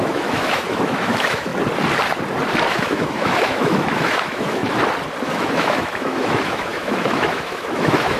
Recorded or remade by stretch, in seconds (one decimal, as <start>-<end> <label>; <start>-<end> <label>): 0.0-1.5 remade; 1.5-2.7 recorded; 2.7-4.6 remade; 4.6-5.2 recorded; 5.2-8.2 remade